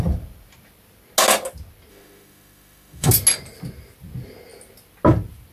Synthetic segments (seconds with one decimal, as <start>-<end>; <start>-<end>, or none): 1.9-3.1